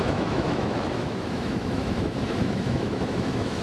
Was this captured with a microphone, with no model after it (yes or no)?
no